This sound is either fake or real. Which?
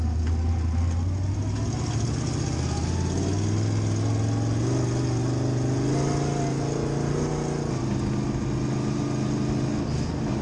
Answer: real